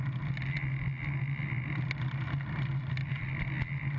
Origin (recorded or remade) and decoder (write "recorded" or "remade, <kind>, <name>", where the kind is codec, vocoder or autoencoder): recorded